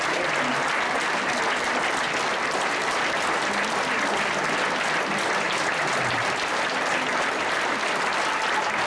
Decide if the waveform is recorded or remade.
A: recorded